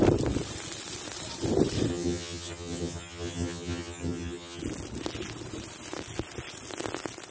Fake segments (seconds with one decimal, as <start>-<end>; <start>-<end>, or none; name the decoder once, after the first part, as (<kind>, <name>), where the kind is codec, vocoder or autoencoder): 1.9-4.6 (vocoder, HiFi-GAN)